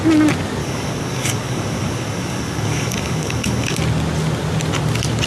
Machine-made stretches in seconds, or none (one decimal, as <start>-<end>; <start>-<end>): 0.6-3.8